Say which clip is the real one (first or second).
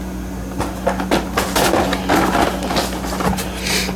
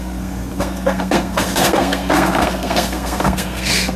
first